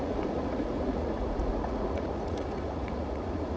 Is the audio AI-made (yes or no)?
yes